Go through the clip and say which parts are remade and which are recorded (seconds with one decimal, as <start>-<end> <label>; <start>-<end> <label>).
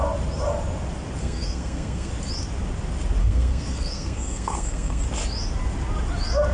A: 0.0-1.2 recorded; 1.2-2.1 remade; 2.1-3.2 recorded; 3.2-5.0 remade; 5.0-6.5 recorded